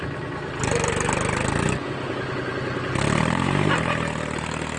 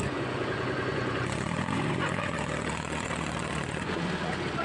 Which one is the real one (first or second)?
first